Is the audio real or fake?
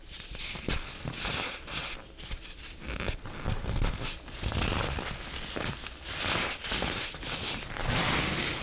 real